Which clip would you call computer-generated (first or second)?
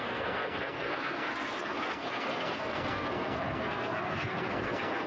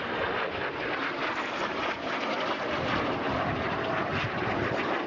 first